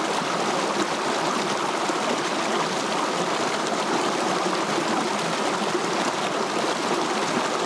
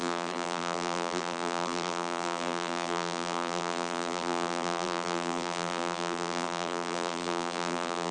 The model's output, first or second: second